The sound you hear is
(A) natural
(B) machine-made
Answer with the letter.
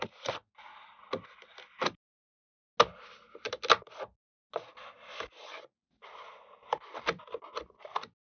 A